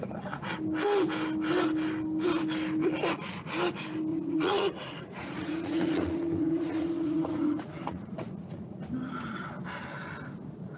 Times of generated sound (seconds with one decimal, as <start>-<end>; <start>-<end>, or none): 4.1-8.8